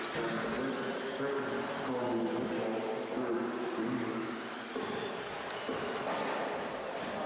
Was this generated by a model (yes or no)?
no